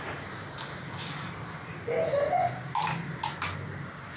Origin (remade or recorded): recorded